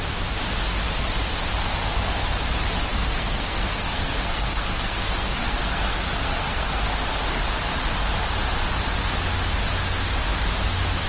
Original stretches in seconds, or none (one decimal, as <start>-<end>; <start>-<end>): 0.0-2.9; 7.4-11.1